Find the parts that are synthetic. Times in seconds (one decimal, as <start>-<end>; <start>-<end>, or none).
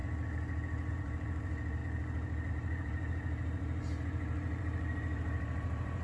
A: 0.9-1.8; 2.5-6.0